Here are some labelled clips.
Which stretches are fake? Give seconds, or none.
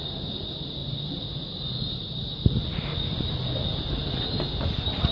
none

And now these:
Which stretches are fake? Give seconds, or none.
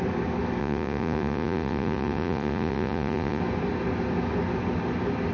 0.6-3.4 (vocoder, Vocos)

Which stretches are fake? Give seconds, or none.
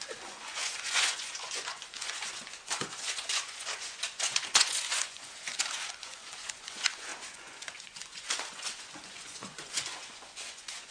0.0-10.9 (vocoder, Vocos)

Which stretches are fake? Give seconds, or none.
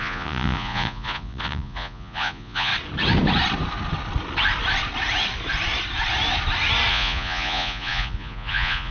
0.0-2.7 (vocoder, Vocos); 6.9-8.9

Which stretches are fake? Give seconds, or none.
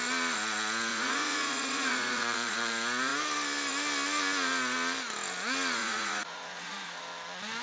0.9-2.7 (vocoder, Vocos); 5.8-7.0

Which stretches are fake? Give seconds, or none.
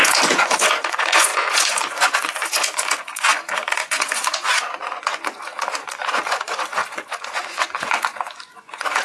0.0-9.0 (vocoder, Vocos)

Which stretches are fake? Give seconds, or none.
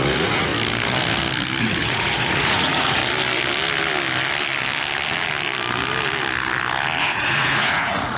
0.0-0.5 (vocoder, Vocos); 1.6-3.0; 7.0-8.2